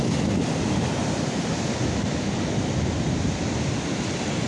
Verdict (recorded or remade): recorded